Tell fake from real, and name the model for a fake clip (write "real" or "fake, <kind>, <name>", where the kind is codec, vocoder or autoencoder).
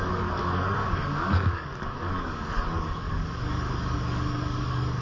fake, codec, DAC